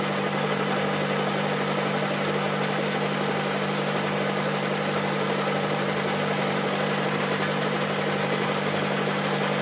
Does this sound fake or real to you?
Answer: real